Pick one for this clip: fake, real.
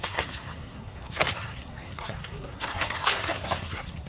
fake